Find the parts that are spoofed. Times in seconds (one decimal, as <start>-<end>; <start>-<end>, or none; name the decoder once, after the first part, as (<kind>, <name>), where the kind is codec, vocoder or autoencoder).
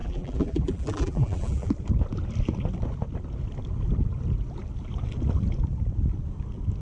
0.0-1.7 (vocoder, BigVGAN v2)